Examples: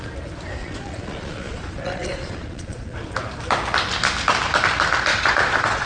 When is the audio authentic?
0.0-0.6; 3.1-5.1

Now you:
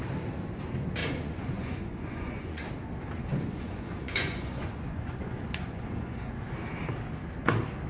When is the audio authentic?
0.0-1.0; 2.7-3.3; 6.3-7.9